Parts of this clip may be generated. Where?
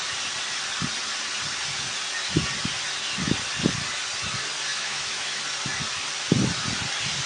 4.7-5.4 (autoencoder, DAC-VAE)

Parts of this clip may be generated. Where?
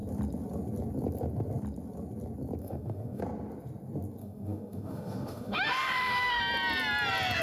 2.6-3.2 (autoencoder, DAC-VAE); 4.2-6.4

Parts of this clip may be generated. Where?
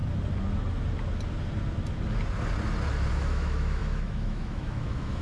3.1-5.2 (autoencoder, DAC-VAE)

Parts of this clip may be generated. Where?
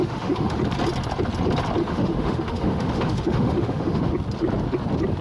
0.0-0.6 (autoencoder, DAC-VAE); 1.8-4.1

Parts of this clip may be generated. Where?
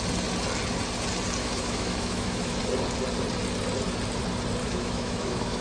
1.4-2.6 (autoencoder, DAC-VAE); 4.6-5.6